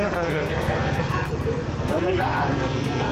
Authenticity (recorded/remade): remade